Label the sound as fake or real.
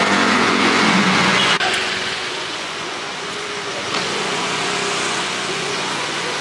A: fake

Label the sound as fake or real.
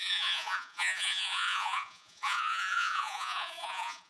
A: fake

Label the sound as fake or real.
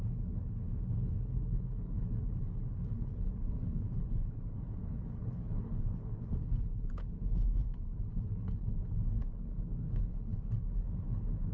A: fake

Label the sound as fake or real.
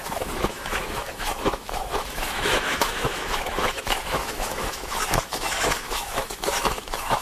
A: fake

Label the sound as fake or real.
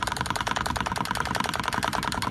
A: fake